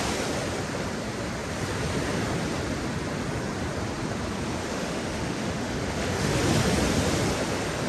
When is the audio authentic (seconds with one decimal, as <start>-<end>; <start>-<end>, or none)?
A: 0.0-4.6; 6.4-7.9